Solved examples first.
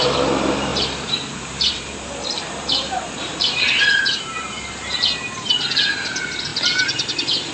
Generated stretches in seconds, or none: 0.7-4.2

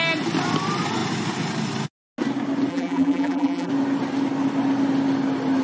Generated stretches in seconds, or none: 2.7-3.7

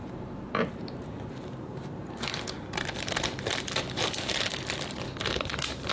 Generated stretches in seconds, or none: 0.0-2.0; 5.5-5.9